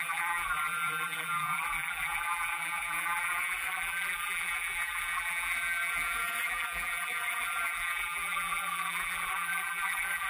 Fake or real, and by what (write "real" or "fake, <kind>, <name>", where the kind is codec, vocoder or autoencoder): fake, vocoder, BigVGAN v2